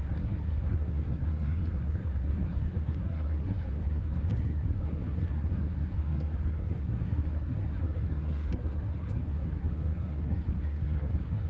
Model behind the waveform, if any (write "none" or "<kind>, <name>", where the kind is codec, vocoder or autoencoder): codec, SNAC